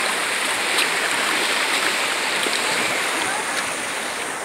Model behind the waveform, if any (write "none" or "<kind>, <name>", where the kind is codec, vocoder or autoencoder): none